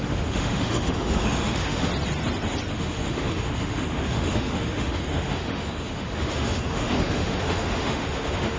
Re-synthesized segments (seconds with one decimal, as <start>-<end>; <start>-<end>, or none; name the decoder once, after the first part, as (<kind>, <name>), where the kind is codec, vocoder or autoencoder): 0.0-1.9 (autoencoder, DAC-VAE); 2.7-8.6